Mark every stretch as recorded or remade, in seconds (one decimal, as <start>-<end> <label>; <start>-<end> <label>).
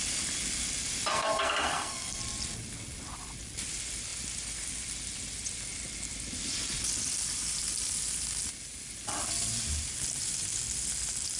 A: 0.0-1.1 recorded; 1.1-2.2 remade; 2.2-11.4 recorded